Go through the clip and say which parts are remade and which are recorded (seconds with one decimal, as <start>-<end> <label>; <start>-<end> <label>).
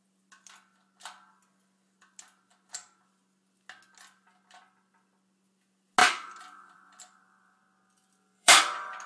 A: 0.0-6.0 recorded; 6.0-7.6 remade; 7.6-8.0 recorded; 8.0-8.6 remade; 8.6-9.1 recorded